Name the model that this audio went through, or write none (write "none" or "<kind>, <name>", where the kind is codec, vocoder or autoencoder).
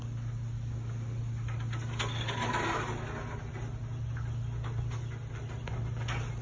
none